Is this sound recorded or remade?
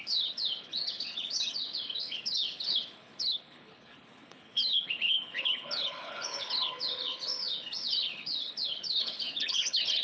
remade